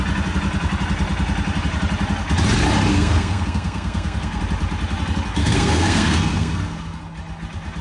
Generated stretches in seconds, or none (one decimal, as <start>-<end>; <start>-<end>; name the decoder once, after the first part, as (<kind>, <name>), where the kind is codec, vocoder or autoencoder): 2.9-4.4 (codec, SNAC); 5.4-7.0